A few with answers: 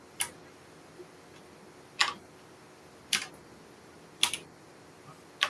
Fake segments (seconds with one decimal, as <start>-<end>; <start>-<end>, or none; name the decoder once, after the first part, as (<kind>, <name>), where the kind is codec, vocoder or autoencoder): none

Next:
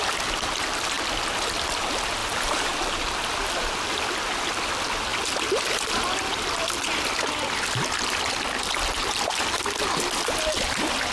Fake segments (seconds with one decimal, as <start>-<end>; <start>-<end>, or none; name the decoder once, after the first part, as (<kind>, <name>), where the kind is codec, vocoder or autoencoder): 2.2-3.2 (vocoder, BigVGAN v2)

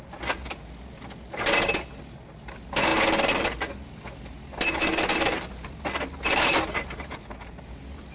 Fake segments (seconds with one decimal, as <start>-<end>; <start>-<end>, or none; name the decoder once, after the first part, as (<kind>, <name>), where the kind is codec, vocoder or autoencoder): none